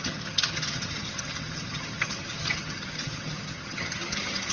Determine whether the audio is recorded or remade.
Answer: remade